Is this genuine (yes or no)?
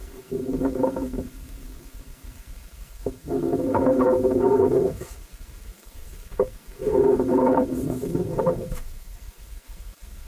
no